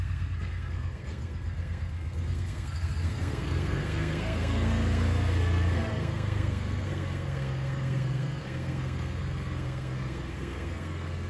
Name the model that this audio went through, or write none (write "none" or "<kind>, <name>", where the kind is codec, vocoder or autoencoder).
codec, SNAC